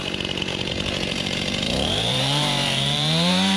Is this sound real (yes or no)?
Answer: no